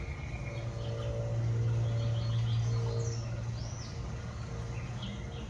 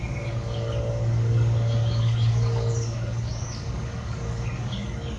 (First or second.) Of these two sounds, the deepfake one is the second